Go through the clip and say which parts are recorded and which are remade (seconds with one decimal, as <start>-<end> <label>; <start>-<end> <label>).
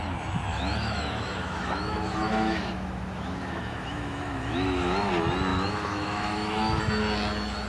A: 0.0-0.5 recorded; 0.5-5.1 remade; 5.1-5.5 recorded; 5.5-6.8 remade; 6.8-7.7 recorded